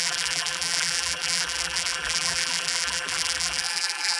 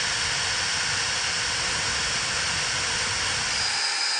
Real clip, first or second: second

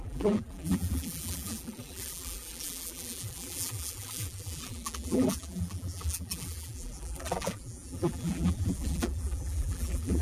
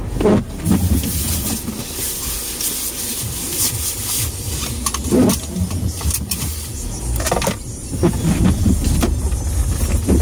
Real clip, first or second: second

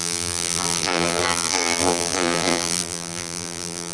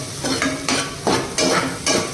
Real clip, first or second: second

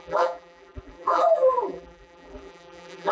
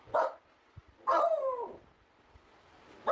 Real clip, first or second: second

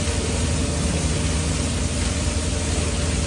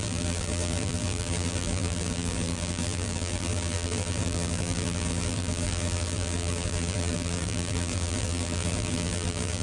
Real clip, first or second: first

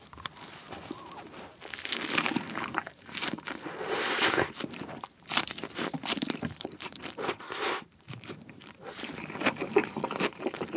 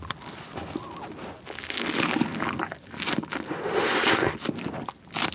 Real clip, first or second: second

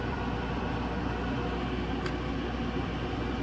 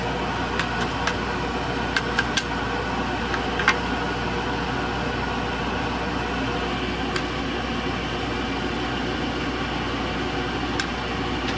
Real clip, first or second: second